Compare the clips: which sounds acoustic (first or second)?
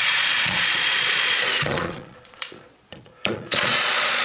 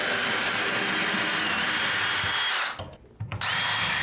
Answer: second